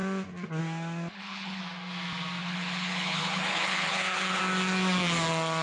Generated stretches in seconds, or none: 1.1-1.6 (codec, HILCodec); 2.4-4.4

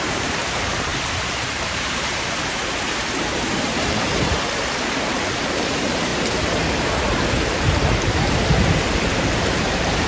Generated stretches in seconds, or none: 0.0-10.1 (vocoder, BigVGAN v2)

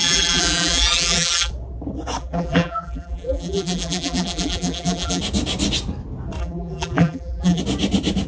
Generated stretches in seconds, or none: 0.0-1.5 (vocoder, BigVGAN v2); 2.2-5.2; 6.4-7.6

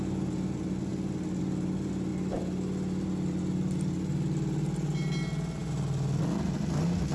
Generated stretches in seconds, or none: none

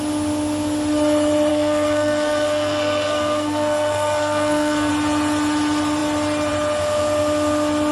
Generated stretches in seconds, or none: 1.5-4.9 (codec, SNAC)